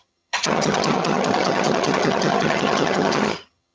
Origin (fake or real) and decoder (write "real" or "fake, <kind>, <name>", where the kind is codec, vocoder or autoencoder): fake, vocoder, HiFi-GAN